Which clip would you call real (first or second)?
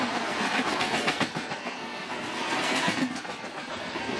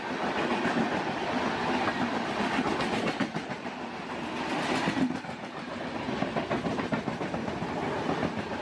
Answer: second